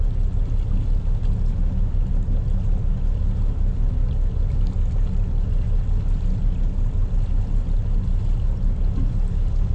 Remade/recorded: recorded